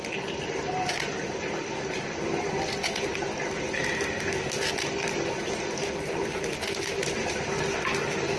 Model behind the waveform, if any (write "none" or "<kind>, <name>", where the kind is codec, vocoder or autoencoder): none